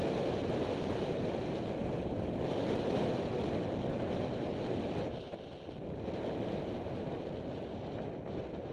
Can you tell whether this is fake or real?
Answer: real